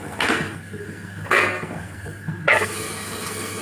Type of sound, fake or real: fake